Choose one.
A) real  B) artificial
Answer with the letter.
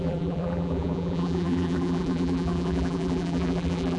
B